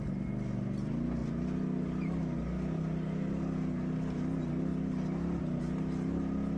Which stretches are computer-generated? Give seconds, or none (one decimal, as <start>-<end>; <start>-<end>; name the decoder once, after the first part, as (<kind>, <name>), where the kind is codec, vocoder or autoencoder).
none